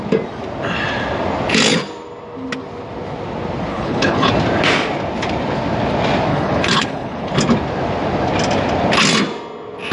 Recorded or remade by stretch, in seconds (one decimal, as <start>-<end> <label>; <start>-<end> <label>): 0.0-3.7 recorded; 3.7-4.3 remade; 4.3-6.3 recorded; 6.3-7.3 remade; 7.3-9.9 recorded